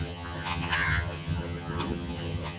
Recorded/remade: remade